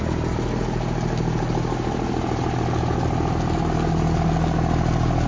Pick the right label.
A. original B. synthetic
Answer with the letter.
A